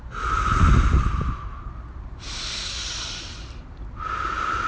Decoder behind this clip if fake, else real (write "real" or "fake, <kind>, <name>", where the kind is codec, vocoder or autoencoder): real